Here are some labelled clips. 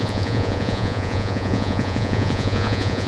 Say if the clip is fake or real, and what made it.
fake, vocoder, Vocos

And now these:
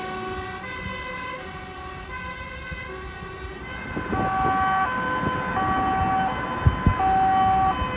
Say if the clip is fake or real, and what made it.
real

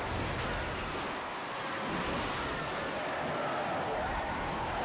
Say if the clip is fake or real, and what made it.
real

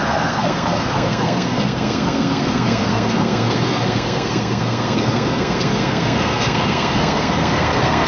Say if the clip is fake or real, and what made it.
fake, codec, SNAC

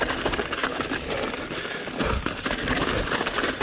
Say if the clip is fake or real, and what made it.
real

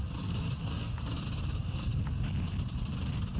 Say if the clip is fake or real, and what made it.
real